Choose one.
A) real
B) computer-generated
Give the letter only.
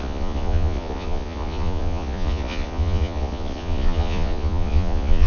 B